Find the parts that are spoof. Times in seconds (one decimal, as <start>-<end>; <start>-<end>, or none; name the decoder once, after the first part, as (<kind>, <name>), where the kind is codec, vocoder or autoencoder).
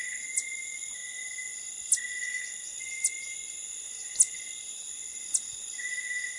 none